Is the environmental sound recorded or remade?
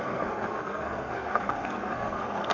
remade